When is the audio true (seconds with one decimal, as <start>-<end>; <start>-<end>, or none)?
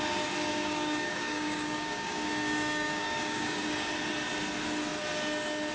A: 0.0-0.5; 3.9-5.7